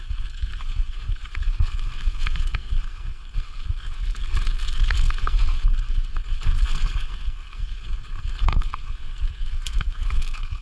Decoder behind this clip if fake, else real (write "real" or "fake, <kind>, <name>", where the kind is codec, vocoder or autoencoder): fake, codec, SNAC